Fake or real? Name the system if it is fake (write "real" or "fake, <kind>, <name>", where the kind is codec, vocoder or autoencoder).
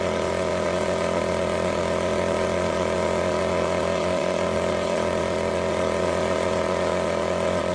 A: fake, vocoder, Vocos